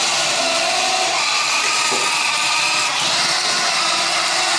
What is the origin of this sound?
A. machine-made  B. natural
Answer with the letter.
B